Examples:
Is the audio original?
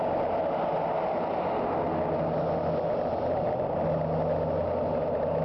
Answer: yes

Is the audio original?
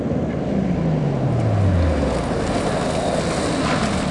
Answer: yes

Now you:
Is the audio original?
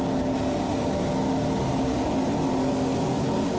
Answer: yes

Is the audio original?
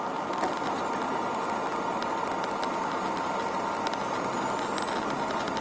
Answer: yes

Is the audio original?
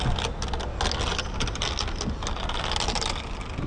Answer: yes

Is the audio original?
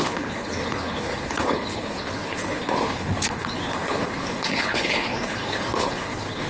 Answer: no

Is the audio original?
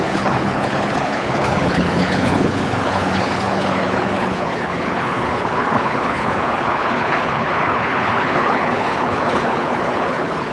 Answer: no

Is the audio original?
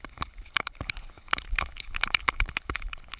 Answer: no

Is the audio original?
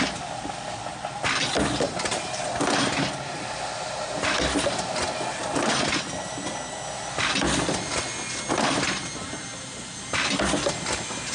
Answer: yes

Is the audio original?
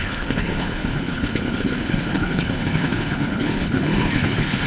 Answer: no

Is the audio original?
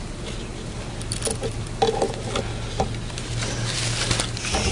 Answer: yes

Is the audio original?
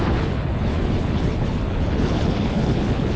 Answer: no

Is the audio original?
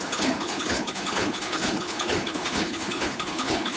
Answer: no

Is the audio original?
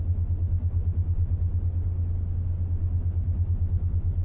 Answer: yes